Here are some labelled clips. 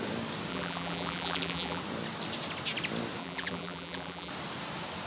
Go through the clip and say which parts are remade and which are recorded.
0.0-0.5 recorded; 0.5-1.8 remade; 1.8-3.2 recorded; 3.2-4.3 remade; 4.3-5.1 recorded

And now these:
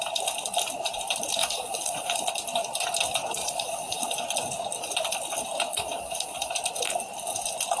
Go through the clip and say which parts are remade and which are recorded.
0.0-1.4 recorded; 1.4-2.3 remade; 2.3-3.4 recorded; 3.4-4.1 remade; 4.1-5.7 recorded; 5.7-6.5 remade; 6.5-7.8 recorded

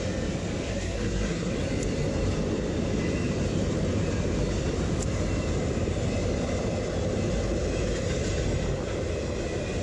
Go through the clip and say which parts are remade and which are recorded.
0.0-0.7 recorded; 0.7-1.5 remade; 1.5-9.8 recorded

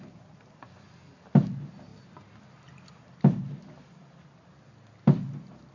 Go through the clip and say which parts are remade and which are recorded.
0.0-5.7 recorded